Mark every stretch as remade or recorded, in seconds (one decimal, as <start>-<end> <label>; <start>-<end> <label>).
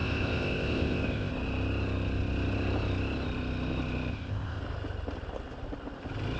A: 0.0-1.3 remade; 1.3-4.1 recorded; 4.1-4.6 remade; 4.6-6.4 recorded